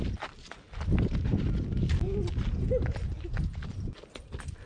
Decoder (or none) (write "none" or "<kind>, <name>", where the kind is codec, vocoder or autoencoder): none